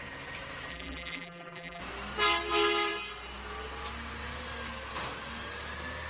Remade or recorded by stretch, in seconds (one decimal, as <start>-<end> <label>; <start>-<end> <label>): 0.0-0.7 recorded; 0.7-1.8 remade; 1.8-6.1 recorded